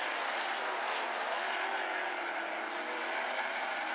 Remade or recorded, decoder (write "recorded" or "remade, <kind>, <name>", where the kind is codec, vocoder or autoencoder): recorded